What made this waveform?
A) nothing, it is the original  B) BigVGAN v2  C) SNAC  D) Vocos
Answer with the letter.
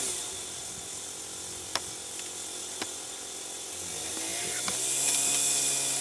A